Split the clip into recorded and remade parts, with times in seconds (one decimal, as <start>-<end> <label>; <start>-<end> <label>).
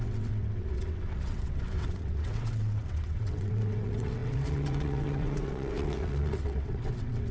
0.0-7.3 remade